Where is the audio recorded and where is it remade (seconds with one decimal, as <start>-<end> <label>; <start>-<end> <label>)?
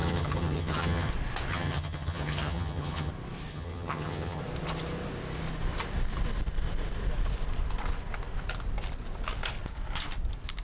0.0-1.1 remade; 1.1-1.5 recorded; 1.5-3.1 remade; 3.1-3.5 recorded; 3.5-4.4 remade; 4.4-10.6 recorded